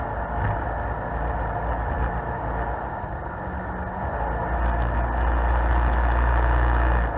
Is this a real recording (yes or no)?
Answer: yes